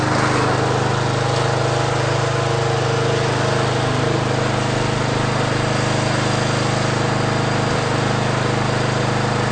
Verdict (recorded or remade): recorded